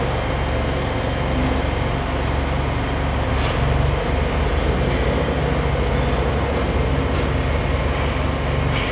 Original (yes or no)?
yes